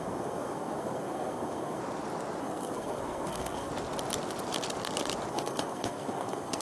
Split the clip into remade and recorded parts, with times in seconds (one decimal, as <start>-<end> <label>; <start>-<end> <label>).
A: 0.0-1.8 remade; 1.8-2.4 recorded; 2.4-3.7 remade; 3.7-5.3 recorded; 5.3-6.6 remade

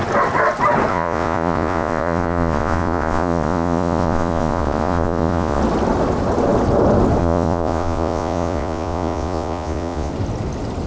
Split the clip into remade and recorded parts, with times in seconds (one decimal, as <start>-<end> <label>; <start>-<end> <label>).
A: 0.0-0.9 recorded; 0.9-5.6 remade; 5.6-7.2 recorded; 7.2-10.1 remade; 10.1-10.9 recorded

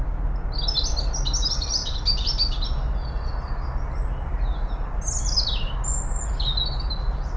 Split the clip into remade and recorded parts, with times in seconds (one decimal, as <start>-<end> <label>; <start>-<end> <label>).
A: 0.0-7.4 recorded

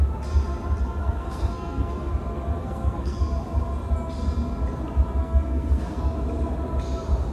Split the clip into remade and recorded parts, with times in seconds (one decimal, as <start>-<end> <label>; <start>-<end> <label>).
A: 0.0-1.0 recorded; 1.0-2.1 remade; 2.1-2.6 recorded; 2.6-3.2 remade; 3.2-5.2 recorded; 5.2-6.0 remade; 6.0-7.3 recorded

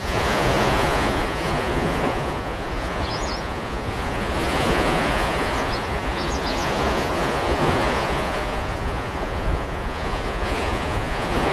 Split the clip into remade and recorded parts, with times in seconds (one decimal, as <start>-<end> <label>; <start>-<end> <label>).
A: 0.0-11.5 remade

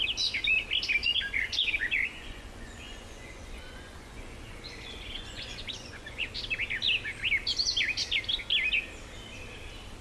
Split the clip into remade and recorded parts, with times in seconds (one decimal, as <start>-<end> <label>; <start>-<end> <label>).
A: 0.0-1.0 recorded; 1.0-6.2 remade; 6.2-10.0 recorded